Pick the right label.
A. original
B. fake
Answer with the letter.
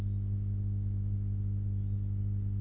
B